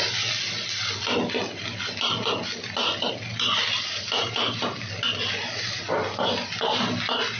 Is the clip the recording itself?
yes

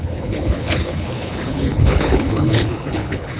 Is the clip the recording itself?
no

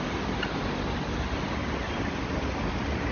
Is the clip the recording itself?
yes